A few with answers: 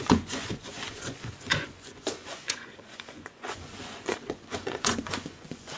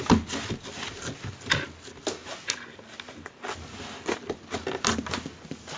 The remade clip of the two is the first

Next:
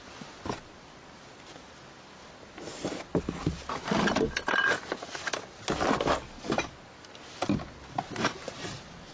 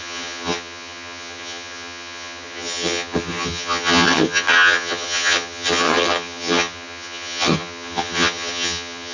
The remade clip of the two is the second